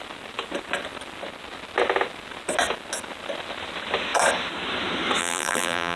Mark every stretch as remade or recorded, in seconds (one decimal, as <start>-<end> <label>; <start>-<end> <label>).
0.0-5.2 recorded; 5.2-6.0 remade